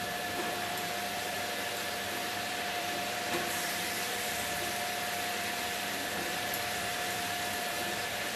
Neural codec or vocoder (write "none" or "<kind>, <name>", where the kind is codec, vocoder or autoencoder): vocoder, BigVGAN v2